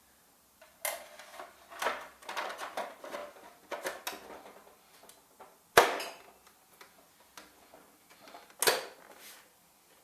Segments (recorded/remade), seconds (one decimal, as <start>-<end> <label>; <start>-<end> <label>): 0.0-10.0 recorded